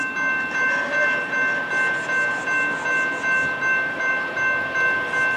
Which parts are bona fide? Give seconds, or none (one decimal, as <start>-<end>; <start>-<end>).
0.0-5.4